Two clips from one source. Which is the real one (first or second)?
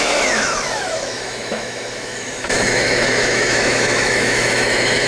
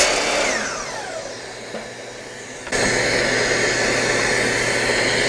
second